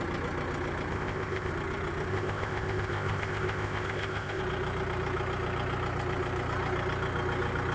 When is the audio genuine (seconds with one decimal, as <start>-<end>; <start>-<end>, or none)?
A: 0.0-0.9; 1.5-2.1; 4.4-7.7